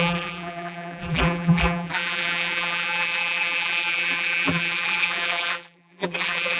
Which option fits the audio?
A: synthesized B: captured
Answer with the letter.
A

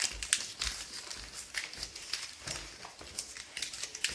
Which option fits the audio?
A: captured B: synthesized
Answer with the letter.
A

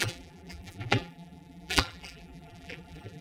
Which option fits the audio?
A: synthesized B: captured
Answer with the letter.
A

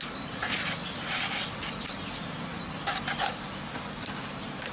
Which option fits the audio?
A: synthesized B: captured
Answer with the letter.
B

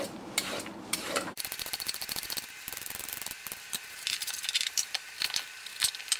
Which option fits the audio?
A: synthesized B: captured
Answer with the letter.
A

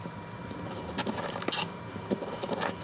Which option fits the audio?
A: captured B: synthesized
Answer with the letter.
B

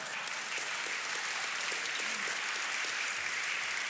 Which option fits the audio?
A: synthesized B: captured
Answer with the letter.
B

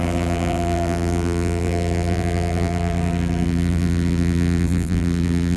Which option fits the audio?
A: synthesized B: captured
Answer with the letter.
A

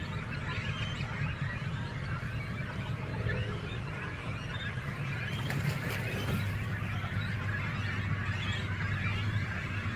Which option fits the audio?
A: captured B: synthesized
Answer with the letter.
A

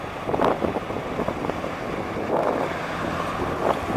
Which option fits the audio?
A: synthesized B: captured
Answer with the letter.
B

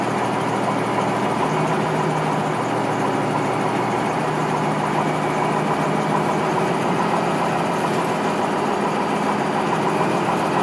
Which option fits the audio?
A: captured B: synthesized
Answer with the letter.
A